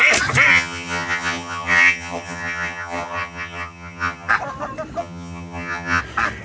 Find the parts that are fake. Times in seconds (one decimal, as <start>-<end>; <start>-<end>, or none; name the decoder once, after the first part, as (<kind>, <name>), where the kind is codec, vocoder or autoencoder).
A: 0.5-4.3 (vocoder, HiFi-GAN); 5.0-6.0